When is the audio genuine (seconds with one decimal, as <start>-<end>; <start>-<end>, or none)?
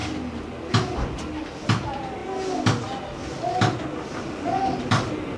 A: 0.0-5.4